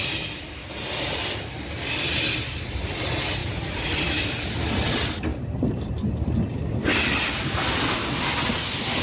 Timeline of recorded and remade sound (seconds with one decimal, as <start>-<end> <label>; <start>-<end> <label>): 0.0-3.4 recorded; 3.4-4.6 remade; 4.6-5.3 recorded; 5.3-5.9 remade; 5.9-9.0 recorded